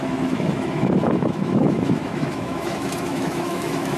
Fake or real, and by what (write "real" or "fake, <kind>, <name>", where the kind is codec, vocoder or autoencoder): fake, autoencoder, DAC-VAE